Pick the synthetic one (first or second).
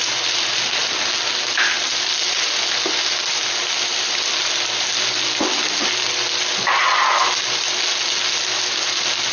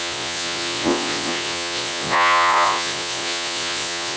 second